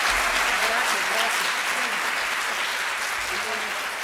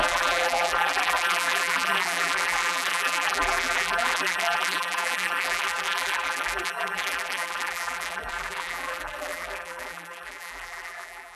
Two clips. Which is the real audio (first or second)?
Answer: first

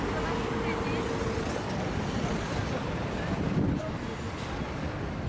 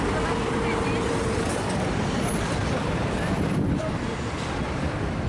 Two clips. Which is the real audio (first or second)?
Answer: first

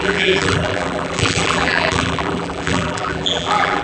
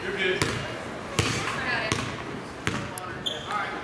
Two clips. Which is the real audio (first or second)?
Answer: second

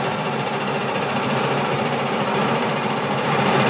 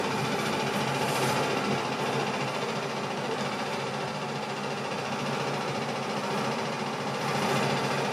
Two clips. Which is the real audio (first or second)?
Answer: second